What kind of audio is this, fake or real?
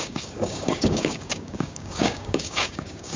fake